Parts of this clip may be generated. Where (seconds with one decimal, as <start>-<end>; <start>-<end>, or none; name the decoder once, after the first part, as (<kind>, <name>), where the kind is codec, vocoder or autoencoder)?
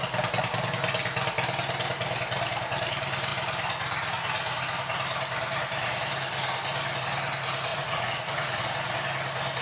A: 7.7-8.6 (vocoder, Vocos)